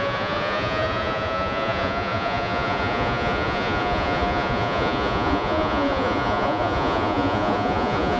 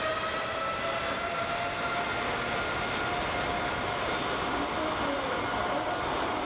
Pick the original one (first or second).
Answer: second